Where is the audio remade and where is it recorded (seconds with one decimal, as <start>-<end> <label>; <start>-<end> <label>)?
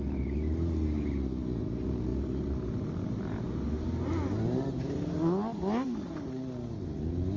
0.0-7.4 recorded